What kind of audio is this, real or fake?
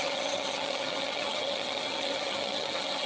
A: fake